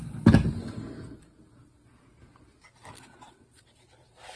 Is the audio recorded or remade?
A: recorded